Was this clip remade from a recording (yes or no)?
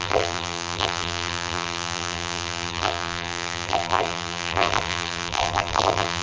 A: yes